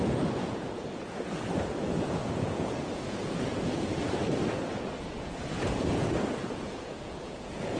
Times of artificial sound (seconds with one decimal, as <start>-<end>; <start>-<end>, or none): 0.0-4.2; 4.7-7.8